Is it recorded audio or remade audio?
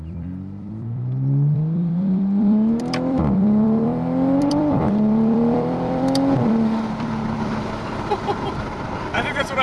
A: remade